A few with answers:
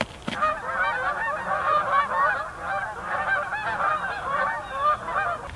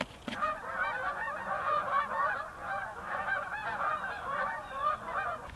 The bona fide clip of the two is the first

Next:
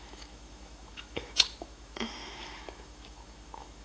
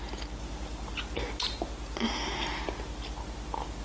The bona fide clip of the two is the second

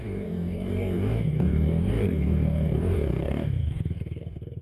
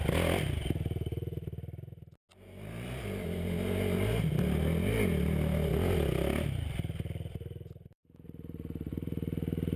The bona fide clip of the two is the second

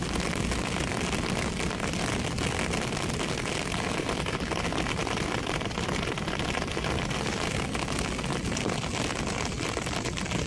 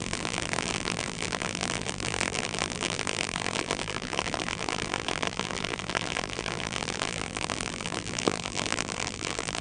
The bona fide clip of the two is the first